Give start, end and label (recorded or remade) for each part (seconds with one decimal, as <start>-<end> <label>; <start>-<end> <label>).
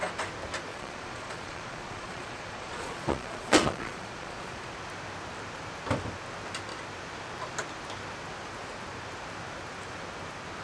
0.0-0.7 recorded; 0.7-4.7 remade; 4.7-10.6 recorded